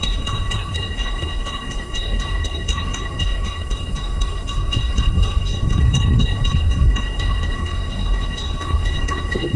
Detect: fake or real fake